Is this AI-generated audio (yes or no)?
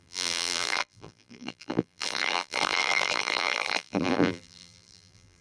yes